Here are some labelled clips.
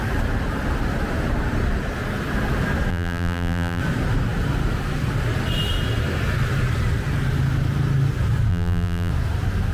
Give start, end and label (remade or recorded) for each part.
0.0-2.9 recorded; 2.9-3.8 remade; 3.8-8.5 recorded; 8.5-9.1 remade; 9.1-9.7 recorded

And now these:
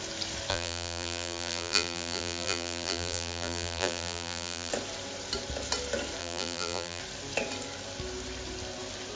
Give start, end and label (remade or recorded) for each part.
0.0-0.5 recorded; 0.5-4.7 remade; 4.7-6.2 recorded; 6.2-7.0 remade; 7.0-9.2 recorded

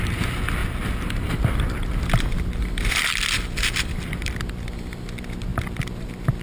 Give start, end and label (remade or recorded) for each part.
0.0-0.6 recorded; 0.6-4.4 remade; 4.4-6.4 recorded

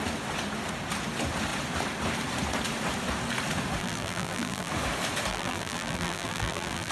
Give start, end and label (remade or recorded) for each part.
0.0-3.8 recorded; 3.8-4.7 remade; 4.7-5.3 recorded; 5.3-6.9 remade

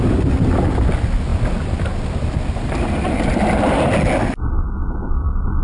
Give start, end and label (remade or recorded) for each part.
0.0-1.3 recorded; 1.3-3.9 remade; 3.9-5.6 recorded